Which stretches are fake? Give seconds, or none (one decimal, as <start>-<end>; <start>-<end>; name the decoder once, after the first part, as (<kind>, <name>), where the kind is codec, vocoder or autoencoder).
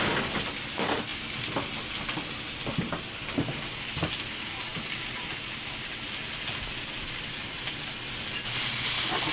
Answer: none